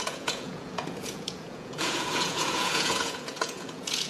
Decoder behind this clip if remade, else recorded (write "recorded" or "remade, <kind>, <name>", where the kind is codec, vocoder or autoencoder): remade, vocoder, Vocos